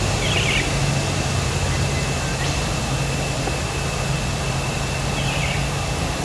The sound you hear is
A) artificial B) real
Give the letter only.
B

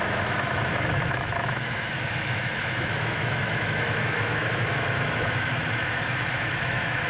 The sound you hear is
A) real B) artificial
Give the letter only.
B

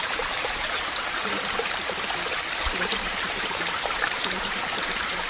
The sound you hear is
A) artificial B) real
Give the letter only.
A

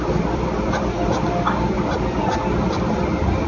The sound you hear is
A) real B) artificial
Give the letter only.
B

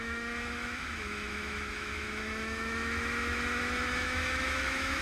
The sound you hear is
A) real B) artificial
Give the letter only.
B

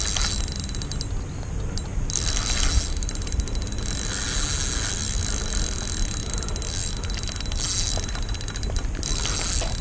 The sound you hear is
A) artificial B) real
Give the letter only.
B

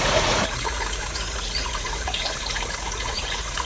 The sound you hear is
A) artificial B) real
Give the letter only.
A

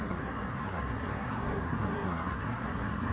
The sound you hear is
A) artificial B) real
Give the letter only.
A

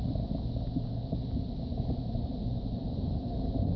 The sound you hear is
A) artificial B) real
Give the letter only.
B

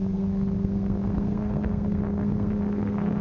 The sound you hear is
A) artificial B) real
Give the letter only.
A